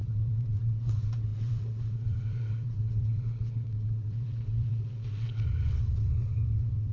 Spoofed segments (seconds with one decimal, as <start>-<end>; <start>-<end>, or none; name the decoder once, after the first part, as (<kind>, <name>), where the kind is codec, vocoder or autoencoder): 0.0-6.9 (vocoder, WaveNeXt)